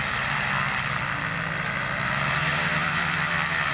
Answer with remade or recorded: recorded